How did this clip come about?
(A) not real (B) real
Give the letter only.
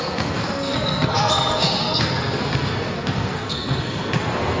A